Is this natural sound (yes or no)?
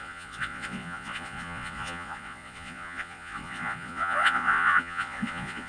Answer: no